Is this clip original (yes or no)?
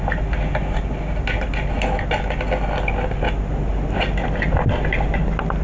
yes